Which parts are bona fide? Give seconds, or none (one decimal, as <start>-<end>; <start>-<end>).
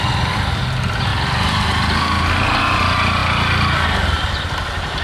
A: 0.0-5.0